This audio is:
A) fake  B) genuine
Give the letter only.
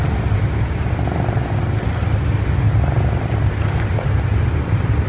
B